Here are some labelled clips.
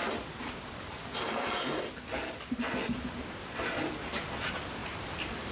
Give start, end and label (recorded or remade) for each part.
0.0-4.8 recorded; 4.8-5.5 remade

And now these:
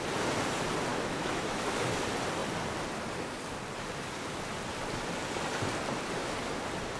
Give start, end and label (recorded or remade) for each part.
0.0-0.9 recorded; 0.9-1.9 remade; 1.9-7.0 recorded

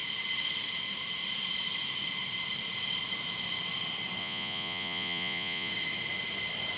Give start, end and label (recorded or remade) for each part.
0.0-4.2 recorded; 4.2-5.7 remade; 5.7-6.8 recorded

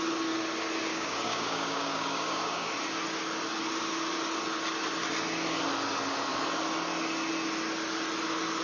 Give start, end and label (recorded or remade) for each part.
0.0-0.9 recorded; 0.9-2.7 remade; 2.7-8.6 recorded

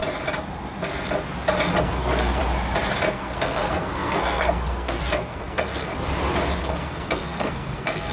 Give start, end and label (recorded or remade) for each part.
0.0-1.8 recorded; 1.8-2.4 remade; 2.4-3.1 recorded; 3.1-5.9 remade; 5.9-6.6 recorded; 6.6-8.1 remade

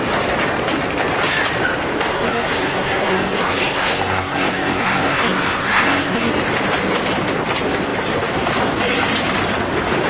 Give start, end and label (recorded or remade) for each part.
0.0-2.1 recorded; 2.1-6.3 remade; 6.3-10.1 recorded

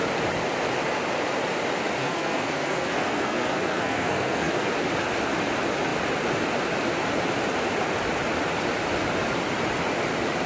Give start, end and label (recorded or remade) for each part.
0.0-2.0 recorded; 2.0-4.5 remade; 4.5-10.5 recorded

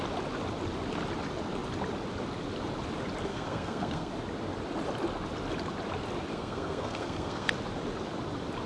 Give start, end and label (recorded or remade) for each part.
0.0-3.3 recorded; 3.3-4.1 remade; 4.1-6.3 recorded; 6.3-7.5 remade; 7.5-8.7 recorded